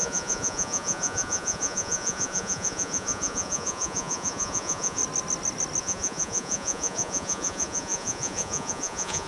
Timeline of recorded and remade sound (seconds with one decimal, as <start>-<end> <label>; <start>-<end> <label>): 0.0-5.0 remade; 5.0-5.8 recorded; 5.8-9.3 remade